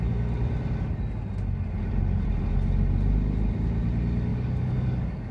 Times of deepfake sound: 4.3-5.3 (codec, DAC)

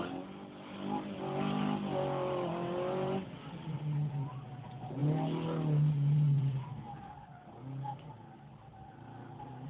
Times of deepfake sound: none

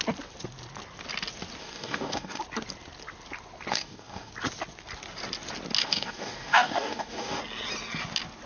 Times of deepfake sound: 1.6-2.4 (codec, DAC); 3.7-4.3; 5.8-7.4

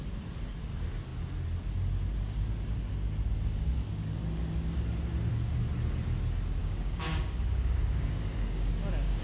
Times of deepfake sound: 6.6-9.2 (codec, DAC)

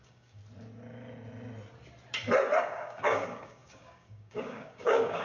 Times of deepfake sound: 0.0-0.4 (codec, DAC); 2.6-5.2

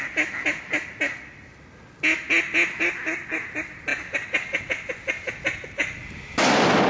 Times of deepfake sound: none